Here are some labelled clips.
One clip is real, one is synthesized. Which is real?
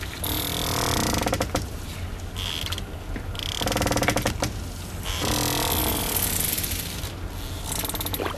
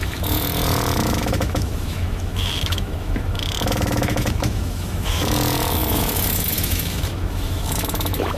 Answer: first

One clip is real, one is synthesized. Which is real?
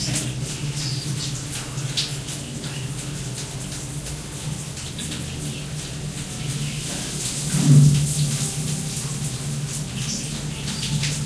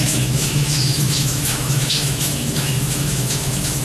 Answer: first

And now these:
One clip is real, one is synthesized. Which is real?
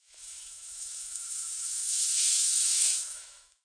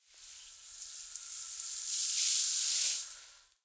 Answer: second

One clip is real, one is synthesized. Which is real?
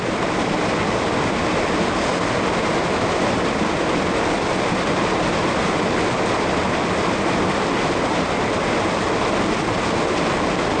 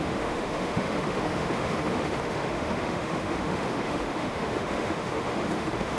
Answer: first